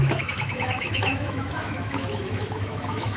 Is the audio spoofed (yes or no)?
yes